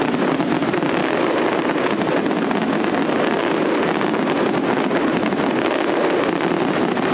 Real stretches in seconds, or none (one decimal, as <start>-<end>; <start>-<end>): 0.0-7.1